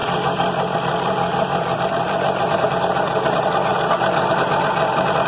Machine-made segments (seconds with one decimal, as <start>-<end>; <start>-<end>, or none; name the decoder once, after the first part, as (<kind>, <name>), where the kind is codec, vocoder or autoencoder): 0.0-2.8 (vocoder, BigVGAN v2); 3.7-4.3